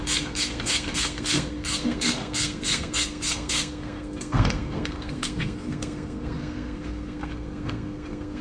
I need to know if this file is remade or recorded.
remade